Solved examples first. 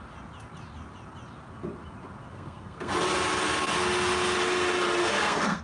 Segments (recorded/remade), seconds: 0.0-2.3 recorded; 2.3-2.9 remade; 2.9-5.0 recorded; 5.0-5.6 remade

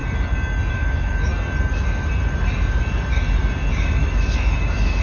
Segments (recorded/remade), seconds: 0.0-0.7 recorded; 0.7-1.3 remade; 1.3-3.7 recorded; 3.7-5.0 remade